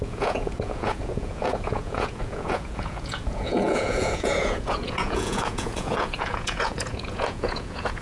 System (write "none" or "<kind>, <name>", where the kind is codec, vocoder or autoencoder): vocoder, Vocos